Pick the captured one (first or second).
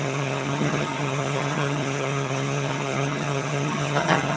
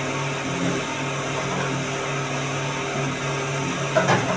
second